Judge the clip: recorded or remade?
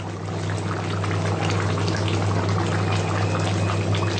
recorded